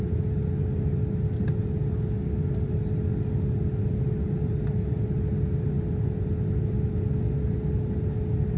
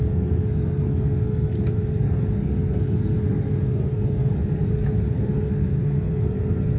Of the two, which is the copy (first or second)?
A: second